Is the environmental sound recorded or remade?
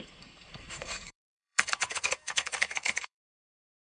remade